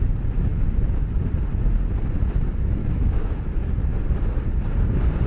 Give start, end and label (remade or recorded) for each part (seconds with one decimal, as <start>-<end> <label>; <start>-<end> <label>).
0.0-2.8 recorded; 2.8-3.4 remade; 3.4-5.3 recorded